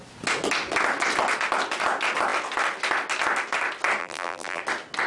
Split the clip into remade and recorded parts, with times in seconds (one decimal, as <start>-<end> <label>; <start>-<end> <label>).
0.0-4.0 recorded; 4.0-4.6 remade; 4.6-5.1 recorded